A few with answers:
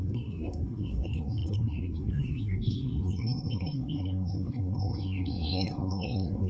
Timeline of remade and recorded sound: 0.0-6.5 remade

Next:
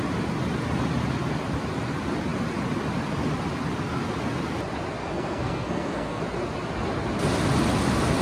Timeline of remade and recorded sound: 0.0-5.0 recorded; 5.0-6.2 remade; 6.2-8.2 recorded

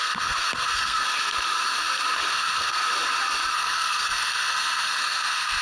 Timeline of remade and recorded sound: 0.0-1.0 remade; 1.0-2.3 recorded; 2.3-2.8 remade; 2.8-3.5 recorded; 3.5-5.6 remade